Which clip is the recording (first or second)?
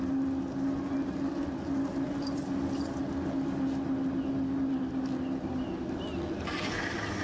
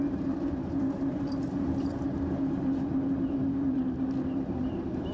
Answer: first